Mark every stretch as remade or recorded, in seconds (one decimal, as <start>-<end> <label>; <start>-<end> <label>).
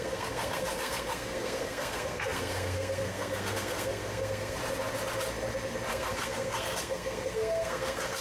0.0-4.6 remade; 4.6-5.9 recorded; 5.9-8.2 remade